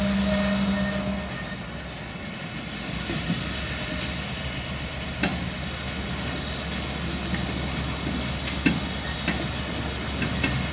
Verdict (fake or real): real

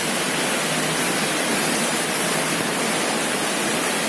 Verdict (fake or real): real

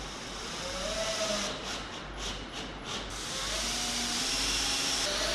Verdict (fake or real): real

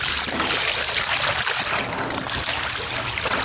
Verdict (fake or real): real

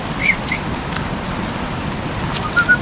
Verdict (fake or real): real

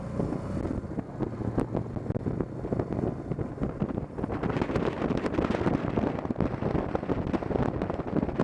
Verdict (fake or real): real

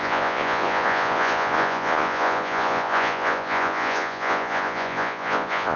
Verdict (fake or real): fake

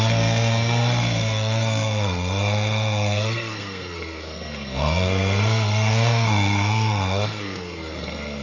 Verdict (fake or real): fake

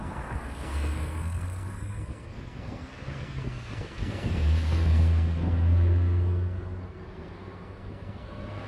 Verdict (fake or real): fake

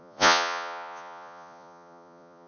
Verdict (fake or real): fake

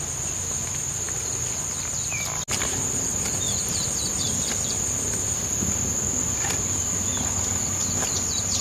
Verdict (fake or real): real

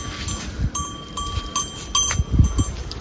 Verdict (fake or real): real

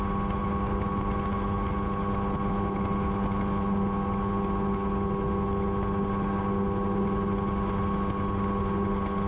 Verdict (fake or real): real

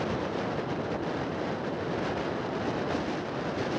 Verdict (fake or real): real